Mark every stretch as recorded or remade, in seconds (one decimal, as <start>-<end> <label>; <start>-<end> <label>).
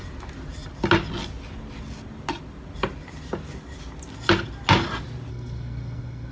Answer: 0.0-5.3 recorded; 5.3-6.3 remade